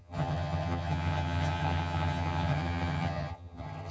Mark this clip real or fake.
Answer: fake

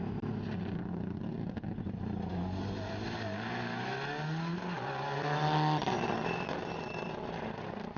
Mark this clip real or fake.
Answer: real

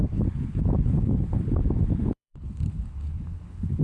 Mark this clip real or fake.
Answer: fake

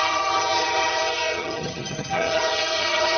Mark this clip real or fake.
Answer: fake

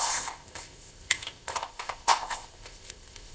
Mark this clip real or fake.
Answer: fake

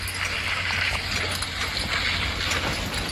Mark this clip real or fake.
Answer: real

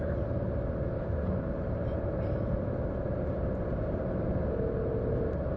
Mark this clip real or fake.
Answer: real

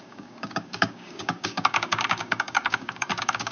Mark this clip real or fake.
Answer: fake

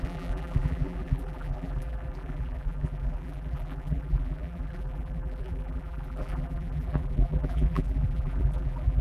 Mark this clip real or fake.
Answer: fake